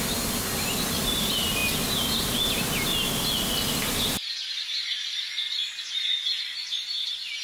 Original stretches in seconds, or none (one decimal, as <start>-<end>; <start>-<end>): 0.0-7.4